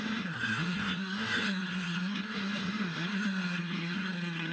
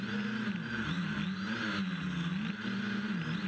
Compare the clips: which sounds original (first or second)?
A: second